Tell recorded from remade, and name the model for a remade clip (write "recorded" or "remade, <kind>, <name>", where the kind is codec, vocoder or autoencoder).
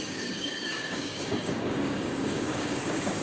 remade, codec, DAC